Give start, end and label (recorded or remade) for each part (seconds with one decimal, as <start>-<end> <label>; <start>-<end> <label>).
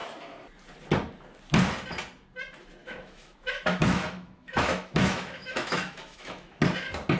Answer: 0.0-2.8 recorded; 2.8-6.6 remade; 6.6-7.2 recorded